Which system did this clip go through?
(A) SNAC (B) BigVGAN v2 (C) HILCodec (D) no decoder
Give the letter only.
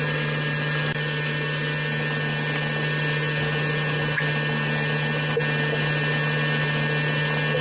D